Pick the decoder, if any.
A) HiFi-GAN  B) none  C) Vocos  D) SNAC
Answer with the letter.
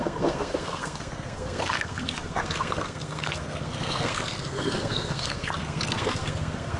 D